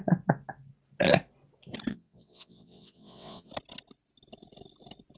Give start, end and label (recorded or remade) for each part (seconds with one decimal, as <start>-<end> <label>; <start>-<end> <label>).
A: 0.0-1.9 recorded; 1.9-3.5 remade; 3.5-5.2 recorded